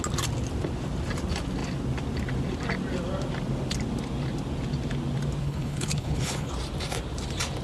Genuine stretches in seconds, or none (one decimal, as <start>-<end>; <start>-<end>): 0.0-5.4; 6.5-7.6